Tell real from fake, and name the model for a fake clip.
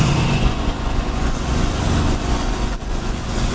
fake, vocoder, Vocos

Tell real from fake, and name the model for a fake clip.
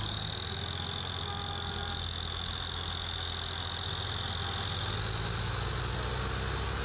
real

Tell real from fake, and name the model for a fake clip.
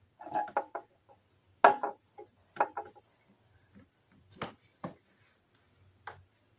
real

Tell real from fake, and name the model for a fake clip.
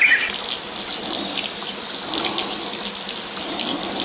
real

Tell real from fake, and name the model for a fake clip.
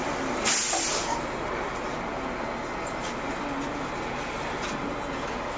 real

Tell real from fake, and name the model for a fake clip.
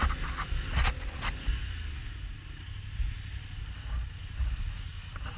real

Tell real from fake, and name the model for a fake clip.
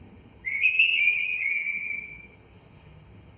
fake, vocoder, HiFi-GAN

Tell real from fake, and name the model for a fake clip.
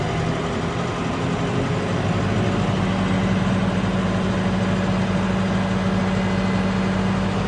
real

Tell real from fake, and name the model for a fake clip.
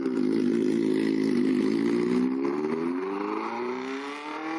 real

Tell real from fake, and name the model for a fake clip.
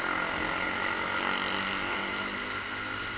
real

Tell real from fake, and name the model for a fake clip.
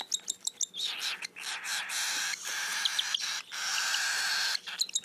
real